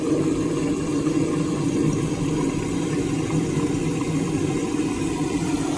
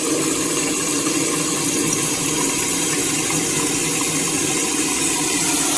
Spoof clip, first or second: second